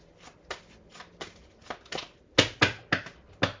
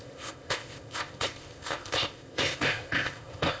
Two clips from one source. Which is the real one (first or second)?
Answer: first